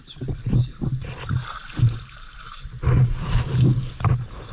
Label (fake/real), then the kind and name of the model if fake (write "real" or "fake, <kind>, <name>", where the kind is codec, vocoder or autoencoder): fake, vocoder, BigVGAN v2